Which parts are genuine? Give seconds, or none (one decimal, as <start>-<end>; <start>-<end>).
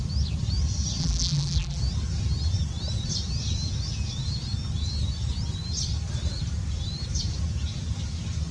0.0-1.0; 1.8-8.5